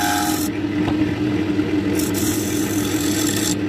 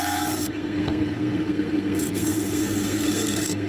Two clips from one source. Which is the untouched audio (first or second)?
first